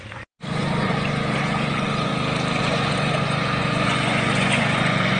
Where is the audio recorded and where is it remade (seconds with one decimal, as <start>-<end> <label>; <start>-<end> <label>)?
0.0-2.1 remade; 2.1-2.6 recorded; 2.6-5.2 remade